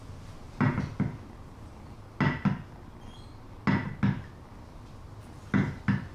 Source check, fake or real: real